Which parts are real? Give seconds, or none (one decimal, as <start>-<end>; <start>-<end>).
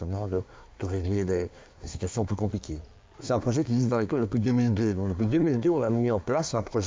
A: 2.5-3.2